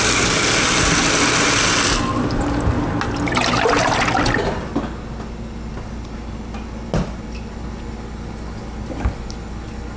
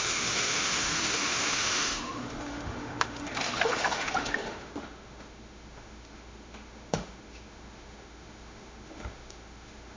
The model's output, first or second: second